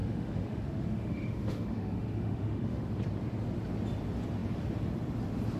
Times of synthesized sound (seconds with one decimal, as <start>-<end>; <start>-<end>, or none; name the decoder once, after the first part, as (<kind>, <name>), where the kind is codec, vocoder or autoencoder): 0.0-2.9 (autoencoder, DAC-VAE)